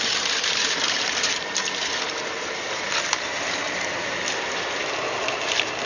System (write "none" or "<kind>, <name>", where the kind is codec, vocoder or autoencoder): vocoder, BigVGAN v2